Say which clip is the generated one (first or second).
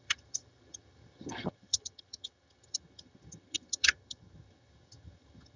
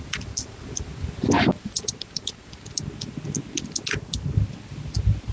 first